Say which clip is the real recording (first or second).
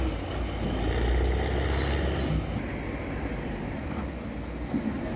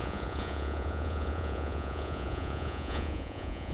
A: first